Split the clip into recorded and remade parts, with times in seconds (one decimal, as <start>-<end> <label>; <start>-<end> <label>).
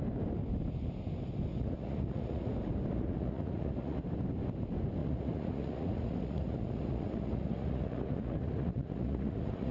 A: 0.0-1.5 recorded; 1.5-2.5 remade; 2.5-2.9 recorded; 2.9-4.0 remade; 4.0-5.0 recorded; 5.0-9.7 remade